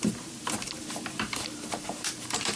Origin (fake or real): fake